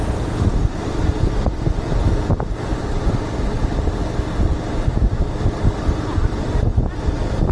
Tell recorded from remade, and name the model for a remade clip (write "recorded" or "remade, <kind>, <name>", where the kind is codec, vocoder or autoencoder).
recorded